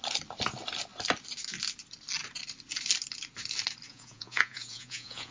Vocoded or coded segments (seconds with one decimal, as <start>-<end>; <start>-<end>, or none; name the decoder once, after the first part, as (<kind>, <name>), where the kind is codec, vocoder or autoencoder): 3.9-5.3 (vocoder, Vocos)